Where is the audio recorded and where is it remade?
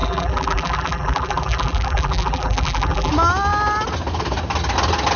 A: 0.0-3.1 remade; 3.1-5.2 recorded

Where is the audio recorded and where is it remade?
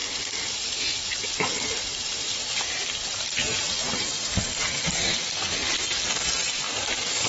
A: 0.0-7.3 recorded